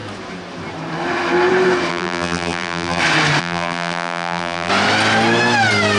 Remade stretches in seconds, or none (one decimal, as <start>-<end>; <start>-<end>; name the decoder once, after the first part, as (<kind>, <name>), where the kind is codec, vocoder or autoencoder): 1.9-3.0 (vocoder, BigVGAN v2); 3.4-4.7